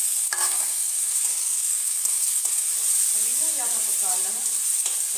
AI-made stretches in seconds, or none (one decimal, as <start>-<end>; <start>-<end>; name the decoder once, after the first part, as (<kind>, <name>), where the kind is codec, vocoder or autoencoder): 0.0-2.7 (codec, SNAC)